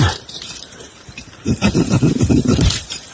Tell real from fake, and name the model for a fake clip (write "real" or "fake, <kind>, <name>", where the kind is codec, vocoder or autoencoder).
fake, vocoder, BigVGAN v2